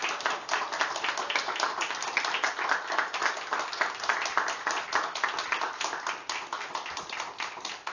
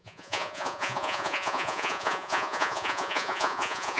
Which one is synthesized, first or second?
second